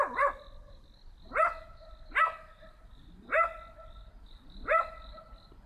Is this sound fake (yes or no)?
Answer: no